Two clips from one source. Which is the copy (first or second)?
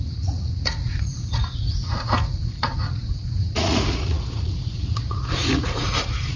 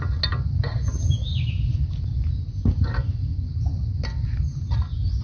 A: first